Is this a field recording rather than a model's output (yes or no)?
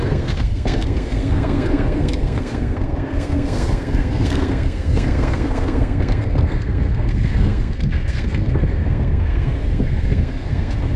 no